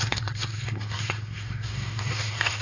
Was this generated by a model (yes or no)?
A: yes